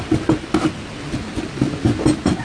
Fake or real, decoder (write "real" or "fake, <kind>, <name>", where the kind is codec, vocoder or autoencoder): real